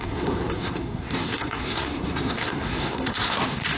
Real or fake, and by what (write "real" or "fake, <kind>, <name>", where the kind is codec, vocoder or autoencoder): fake, codec, SNAC